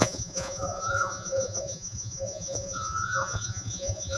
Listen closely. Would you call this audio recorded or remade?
remade